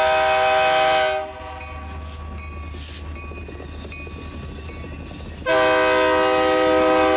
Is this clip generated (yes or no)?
no